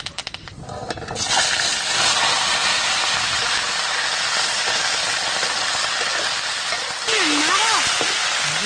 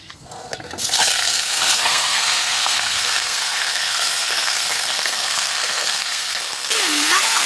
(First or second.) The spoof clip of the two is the second